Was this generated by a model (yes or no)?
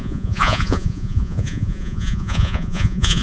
yes